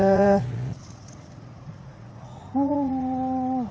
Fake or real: fake